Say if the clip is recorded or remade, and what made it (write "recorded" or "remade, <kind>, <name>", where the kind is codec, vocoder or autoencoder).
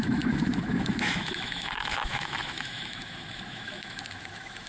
remade, autoencoder, DAC-VAE